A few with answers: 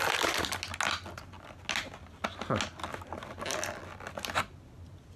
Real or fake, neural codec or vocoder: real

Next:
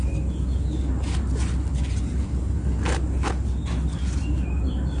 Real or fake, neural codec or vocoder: real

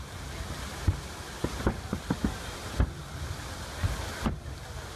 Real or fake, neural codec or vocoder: real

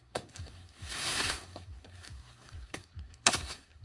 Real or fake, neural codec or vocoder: fake, codec, SNAC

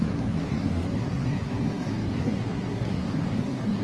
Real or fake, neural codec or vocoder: fake, codec, SNAC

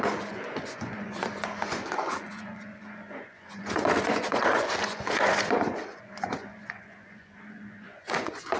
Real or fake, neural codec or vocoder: fake, vocoder, Vocos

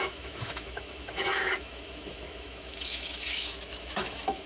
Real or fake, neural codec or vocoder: fake, autoencoder, DAC-VAE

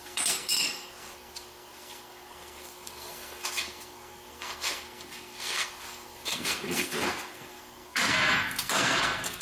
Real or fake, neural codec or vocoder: fake, codec, SNAC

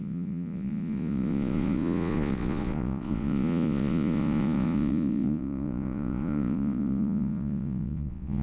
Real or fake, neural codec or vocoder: fake, vocoder, Vocos